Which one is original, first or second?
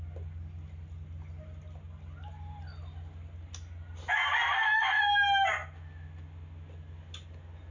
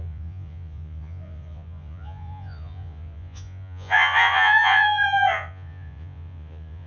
first